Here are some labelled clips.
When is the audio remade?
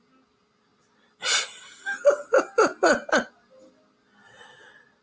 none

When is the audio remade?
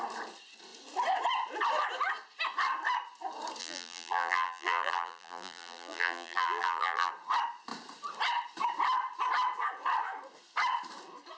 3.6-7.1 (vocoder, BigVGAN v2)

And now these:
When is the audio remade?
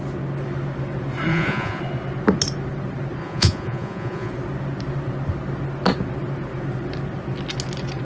1.3-1.8 (vocoder, Vocos); 3.2-4.3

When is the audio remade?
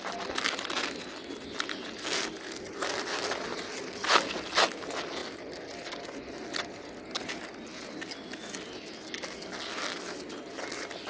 none